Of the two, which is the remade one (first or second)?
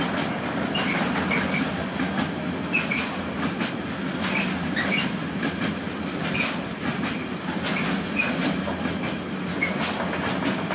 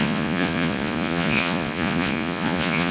second